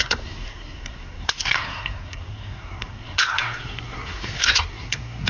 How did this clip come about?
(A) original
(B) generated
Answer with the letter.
B